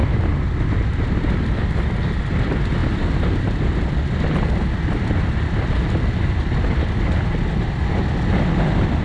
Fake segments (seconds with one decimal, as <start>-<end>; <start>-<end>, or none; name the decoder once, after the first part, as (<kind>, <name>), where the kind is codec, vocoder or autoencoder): none